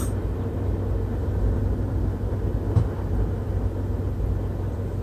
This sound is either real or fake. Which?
real